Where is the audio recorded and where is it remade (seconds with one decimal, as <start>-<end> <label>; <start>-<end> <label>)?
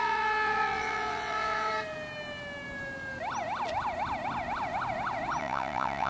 0.0-1.7 remade; 1.7-5.4 recorded; 5.4-6.1 remade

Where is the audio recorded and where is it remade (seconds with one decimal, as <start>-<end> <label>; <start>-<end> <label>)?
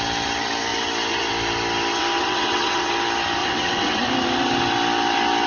0.0-2.2 recorded; 2.2-2.9 remade; 2.9-3.4 recorded; 3.4-4.0 remade; 4.0-5.5 recorded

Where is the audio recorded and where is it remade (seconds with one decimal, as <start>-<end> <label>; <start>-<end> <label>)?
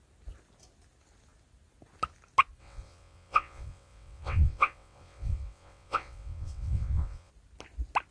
0.0-2.6 recorded; 2.6-7.3 remade; 7.3-8.1 recorded